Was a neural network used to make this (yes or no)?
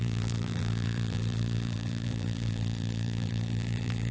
yes